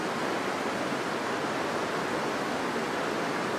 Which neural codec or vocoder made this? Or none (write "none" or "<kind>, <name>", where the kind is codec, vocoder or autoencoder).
none